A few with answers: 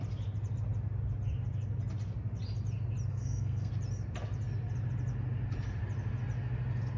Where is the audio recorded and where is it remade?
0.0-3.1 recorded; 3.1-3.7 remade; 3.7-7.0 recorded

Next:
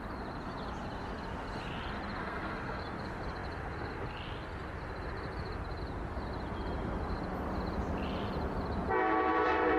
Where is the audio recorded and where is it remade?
0.0-2.2 recorded; 2.2-2.8 remade; 2.8-9.8 recorded

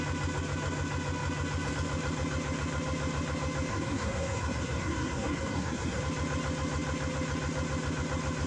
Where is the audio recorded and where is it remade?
0.0-3.7 recorded; 3.7-6.0 remade; 6.0-8.5 recorded

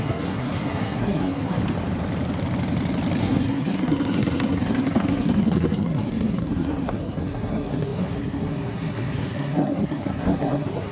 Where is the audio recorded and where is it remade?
0.0-1.6 remade; 1.6-3.2 recorded; 3.2-10.9 remade